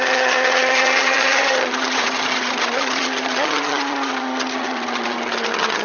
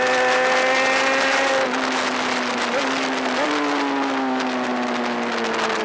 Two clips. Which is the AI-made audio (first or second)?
first